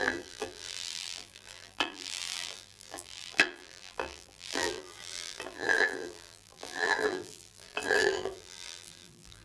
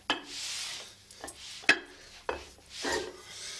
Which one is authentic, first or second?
second